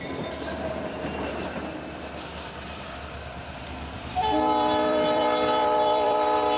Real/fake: fake